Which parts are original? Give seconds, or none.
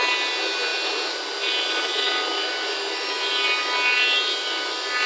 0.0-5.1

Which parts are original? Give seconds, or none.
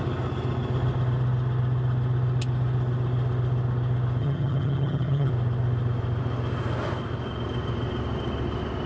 0.0-4.2; 5.3-8.9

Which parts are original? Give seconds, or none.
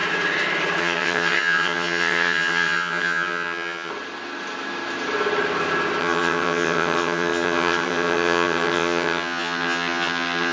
0.0-0.8; 3.9-6.0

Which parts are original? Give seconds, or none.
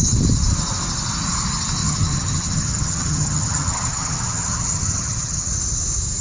0.0-1.8; 5.5-6.2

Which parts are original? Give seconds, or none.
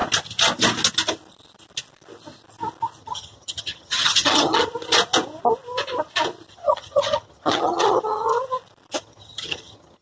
0.0-3.0; 4.7-6.5; 8.3-9.0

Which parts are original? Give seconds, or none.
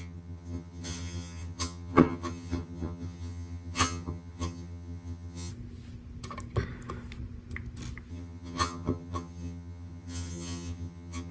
5.5-8.1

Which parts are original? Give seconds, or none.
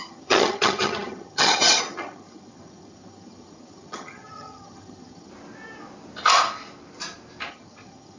5.3-7.5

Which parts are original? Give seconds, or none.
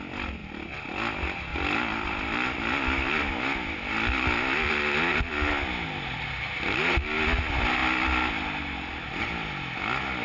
0.0-10.2